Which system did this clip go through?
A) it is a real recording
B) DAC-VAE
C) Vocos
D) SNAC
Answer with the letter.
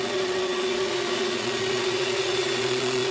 C